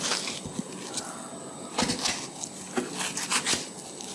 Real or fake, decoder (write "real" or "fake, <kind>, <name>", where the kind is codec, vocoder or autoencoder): real